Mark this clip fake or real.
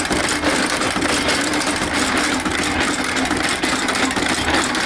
real